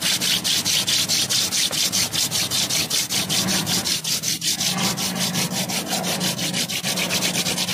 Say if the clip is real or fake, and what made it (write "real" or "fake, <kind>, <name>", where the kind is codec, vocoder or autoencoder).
real